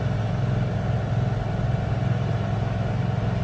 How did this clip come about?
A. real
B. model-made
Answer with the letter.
A